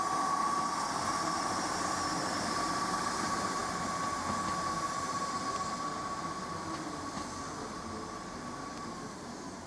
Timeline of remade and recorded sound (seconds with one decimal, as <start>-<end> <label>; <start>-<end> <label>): 0.0-9.7 recorded